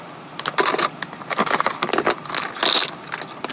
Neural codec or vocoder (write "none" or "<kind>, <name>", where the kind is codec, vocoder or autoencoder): none